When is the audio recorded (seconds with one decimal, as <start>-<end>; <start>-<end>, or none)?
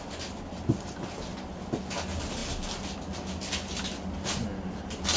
0.0-5.2